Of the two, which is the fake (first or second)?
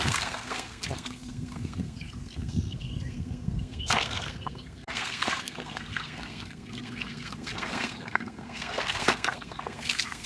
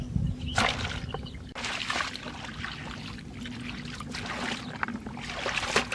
first